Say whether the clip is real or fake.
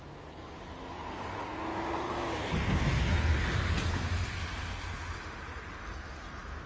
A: real